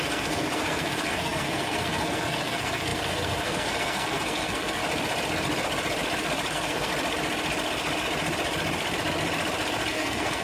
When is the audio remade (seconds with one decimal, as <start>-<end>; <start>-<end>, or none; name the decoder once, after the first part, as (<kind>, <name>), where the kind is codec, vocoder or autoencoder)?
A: 0.0-4.8 (codec, SNAC); 6.5-6.9; 9.9-10.4